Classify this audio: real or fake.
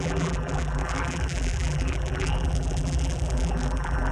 fake